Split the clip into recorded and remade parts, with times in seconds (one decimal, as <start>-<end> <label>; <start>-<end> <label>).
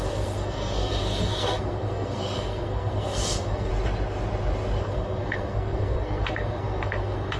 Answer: 0.0-3.7 remade; 3.7-4.8 recorded; 4.8-7.4 remade